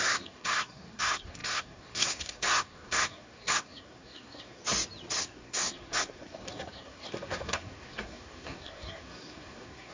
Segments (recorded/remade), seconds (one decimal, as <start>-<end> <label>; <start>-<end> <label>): 0.0-4.6 remade; 4.6-5.2 recorded; 5.2-9.9 remade